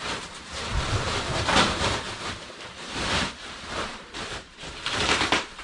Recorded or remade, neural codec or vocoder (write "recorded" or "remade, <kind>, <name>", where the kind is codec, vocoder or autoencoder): remade, vocoder, BigVGAN v2